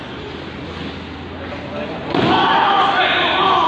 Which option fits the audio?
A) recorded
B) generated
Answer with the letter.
A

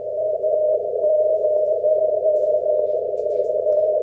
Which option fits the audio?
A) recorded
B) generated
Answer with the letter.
B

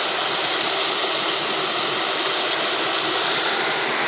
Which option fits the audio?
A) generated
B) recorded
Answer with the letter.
B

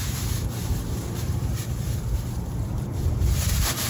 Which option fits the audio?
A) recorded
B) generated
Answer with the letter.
B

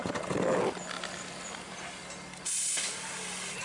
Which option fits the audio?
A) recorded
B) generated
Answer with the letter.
A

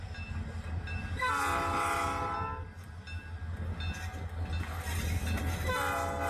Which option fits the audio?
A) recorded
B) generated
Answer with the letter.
A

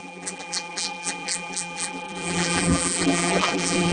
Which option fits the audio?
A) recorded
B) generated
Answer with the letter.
B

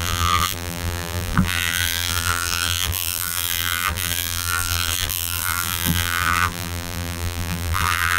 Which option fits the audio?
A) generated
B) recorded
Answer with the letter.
A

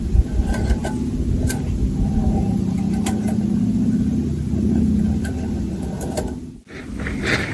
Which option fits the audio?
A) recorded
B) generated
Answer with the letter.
A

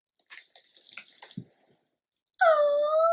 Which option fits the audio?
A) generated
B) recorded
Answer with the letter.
B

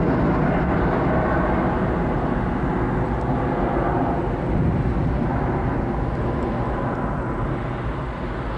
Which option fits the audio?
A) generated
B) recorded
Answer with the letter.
B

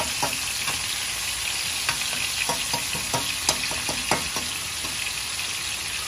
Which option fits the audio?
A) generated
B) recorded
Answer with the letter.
B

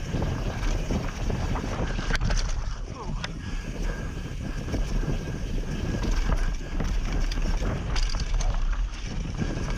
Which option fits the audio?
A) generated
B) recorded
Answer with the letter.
B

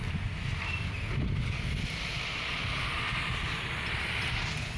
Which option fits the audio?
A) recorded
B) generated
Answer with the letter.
A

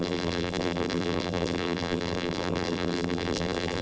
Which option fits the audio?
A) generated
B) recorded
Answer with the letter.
A